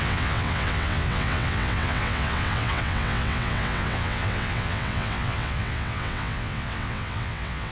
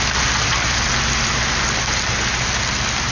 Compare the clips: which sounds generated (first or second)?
first